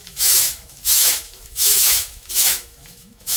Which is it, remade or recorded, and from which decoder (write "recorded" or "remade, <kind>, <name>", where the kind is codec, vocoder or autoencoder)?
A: remade, autoencoder, DAC-VAE